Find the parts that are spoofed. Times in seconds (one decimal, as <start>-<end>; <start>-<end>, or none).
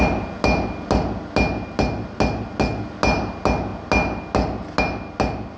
none